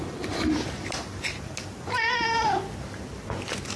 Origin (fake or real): fake